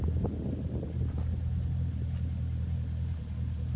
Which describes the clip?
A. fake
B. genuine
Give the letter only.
B